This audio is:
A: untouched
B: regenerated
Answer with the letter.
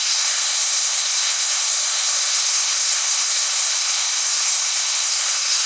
B